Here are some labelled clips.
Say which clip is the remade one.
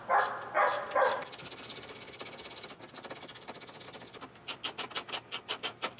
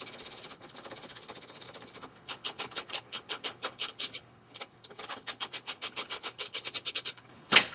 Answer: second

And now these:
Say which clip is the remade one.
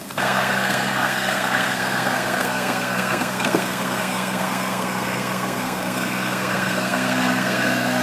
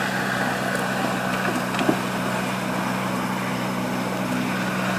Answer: first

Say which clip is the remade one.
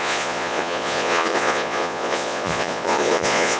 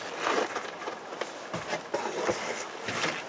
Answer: first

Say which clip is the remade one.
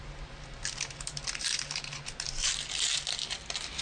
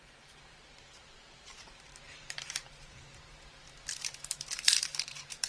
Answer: second